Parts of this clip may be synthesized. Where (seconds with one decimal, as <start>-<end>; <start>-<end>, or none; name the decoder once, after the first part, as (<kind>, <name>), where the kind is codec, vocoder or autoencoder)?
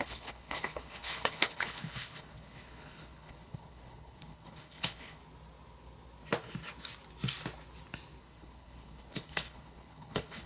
0.0-5.2 (codec, HILCodec); 8.2-10.5